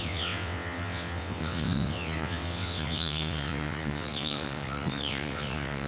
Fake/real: fake